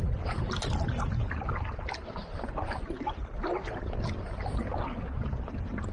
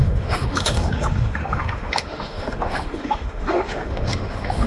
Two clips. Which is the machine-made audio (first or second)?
second